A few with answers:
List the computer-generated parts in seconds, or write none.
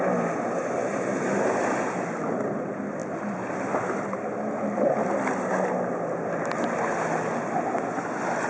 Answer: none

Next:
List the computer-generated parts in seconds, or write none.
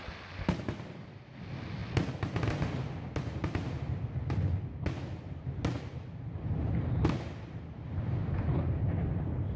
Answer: none